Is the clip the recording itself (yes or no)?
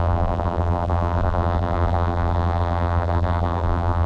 no